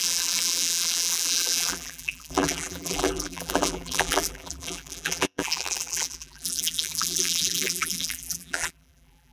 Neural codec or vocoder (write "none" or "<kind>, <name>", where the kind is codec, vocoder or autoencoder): vocoder, BigVGAN v2